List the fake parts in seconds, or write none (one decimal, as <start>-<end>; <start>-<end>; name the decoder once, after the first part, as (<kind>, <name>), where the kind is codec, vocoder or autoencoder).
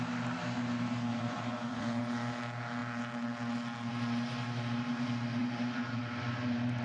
1.1-2.0 (vocoder, Vocos); 5.4-6.0